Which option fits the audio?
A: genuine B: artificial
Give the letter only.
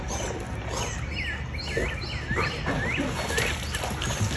A